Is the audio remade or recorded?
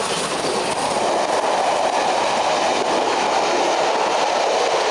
recorded